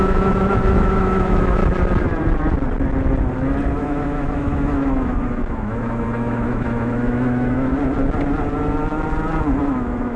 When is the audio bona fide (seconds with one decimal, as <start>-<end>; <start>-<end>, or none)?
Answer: 1.6-3.8; 7.7-9.6